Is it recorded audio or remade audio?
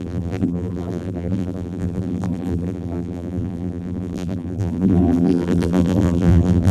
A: remade